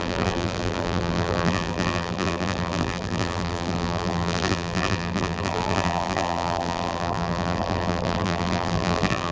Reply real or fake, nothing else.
fake